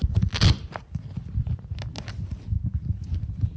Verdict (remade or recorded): recorded